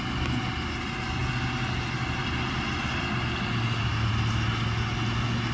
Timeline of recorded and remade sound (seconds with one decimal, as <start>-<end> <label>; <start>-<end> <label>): 0.0-5.5 recorded